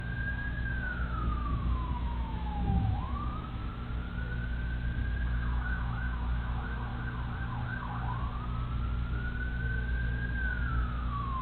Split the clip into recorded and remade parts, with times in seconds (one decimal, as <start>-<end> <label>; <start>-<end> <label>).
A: 0.0-3.6 remade; 3.6-5.2 recorded; 5.2-6.9 remade; 6.9-10.7 recorded; 10.7-11.4 remade